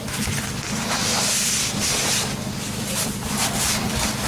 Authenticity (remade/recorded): remade